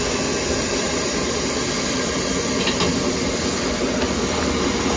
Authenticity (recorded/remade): recorded